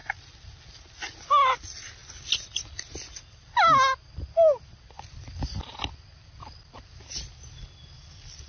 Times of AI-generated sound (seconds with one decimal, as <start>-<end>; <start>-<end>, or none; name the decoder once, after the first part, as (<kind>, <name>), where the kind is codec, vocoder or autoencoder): none